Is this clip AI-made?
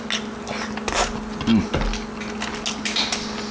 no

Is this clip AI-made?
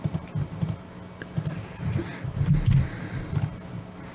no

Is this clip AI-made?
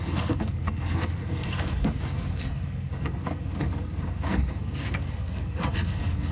yes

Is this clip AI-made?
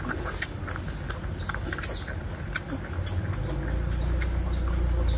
no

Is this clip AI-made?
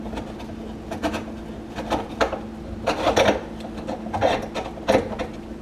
no